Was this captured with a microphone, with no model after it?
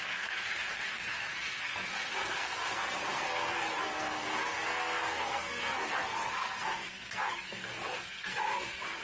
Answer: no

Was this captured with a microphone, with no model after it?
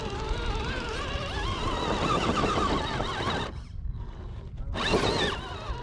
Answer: yes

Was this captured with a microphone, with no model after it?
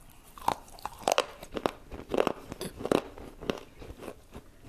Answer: yes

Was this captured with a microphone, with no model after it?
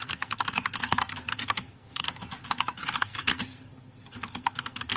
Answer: no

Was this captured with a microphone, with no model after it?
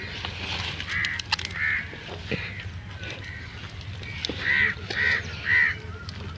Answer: yes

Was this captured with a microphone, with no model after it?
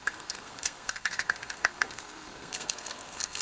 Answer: no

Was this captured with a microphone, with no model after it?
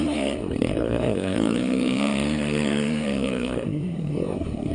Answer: no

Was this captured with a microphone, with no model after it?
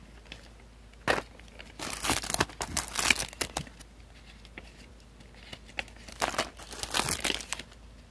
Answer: yes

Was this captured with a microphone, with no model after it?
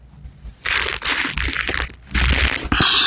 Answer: yes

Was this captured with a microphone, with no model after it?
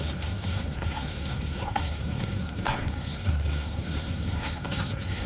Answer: no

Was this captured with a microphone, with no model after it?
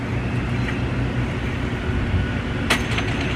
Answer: yes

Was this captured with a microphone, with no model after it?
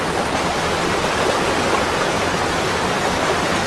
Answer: yes